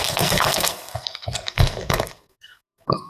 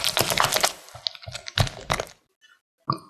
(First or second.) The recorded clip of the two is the second